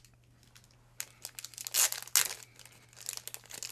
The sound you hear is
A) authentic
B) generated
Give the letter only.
A